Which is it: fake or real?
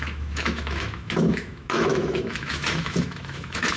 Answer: fake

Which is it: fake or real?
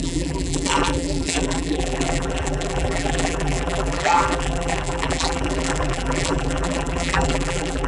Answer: fake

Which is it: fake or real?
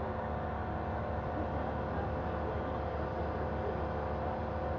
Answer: real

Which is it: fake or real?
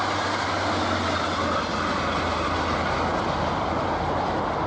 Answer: real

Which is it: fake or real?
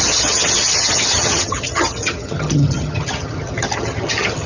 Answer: fake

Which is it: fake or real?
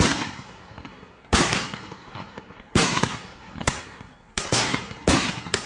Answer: fake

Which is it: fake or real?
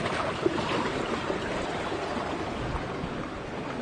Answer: real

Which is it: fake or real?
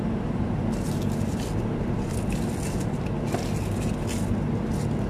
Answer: real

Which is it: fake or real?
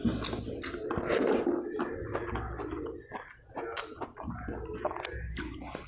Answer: real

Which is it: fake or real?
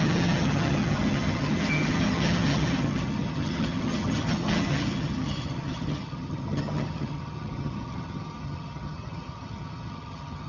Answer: fake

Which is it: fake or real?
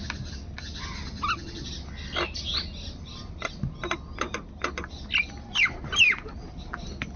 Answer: real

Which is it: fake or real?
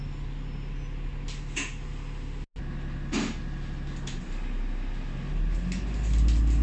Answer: real